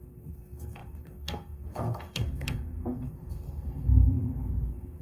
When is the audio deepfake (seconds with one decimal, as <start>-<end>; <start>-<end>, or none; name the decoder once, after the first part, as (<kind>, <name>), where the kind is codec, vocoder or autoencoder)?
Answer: 0.0-5.0 (codec, SNAC)

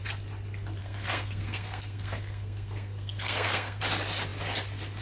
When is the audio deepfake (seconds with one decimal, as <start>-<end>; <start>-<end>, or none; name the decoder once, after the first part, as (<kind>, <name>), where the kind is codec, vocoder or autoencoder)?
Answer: 0.8-3.8 (codec, SNAC)

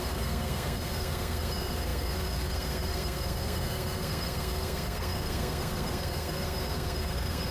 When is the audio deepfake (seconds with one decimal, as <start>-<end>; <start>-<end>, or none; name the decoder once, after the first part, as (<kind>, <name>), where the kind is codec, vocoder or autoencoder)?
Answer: 0.0-7.5 (codec, SNAC)

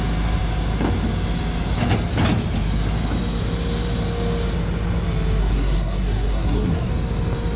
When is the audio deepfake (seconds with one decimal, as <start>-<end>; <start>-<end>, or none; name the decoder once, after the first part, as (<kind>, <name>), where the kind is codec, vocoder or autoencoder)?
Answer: 5.4-6.9 (codec, SNAC)

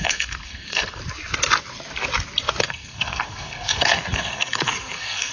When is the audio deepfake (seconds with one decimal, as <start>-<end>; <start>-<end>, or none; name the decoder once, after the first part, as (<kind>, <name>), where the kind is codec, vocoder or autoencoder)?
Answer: 0.0-1.0 (codec, SNAC); 2.6-5.3